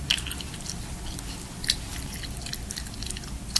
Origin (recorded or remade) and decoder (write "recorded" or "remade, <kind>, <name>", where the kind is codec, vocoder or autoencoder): recorded